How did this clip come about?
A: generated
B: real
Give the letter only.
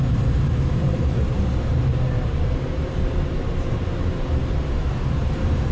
A